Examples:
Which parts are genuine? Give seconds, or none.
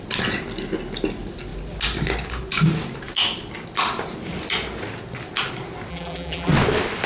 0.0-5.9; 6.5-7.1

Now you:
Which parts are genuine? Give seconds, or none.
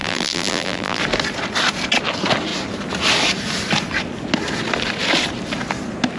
1.0-6.2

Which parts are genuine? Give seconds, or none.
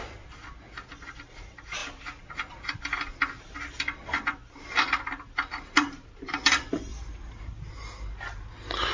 0.0-5.5; 6.1-6.9; 8.5-8.9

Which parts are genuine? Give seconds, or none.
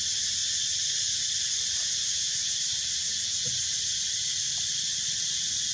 0.0-0.4; 1.4-1.8; 4.8-5.7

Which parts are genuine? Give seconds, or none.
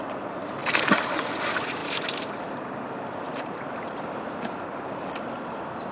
0.6-1.4